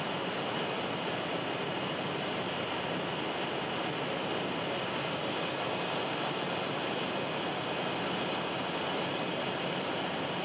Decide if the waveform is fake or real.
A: real